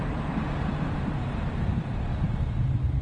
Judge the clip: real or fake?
fake